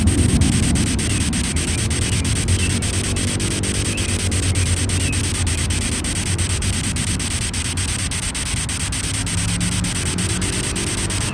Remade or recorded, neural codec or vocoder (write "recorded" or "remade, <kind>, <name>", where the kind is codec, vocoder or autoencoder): recorded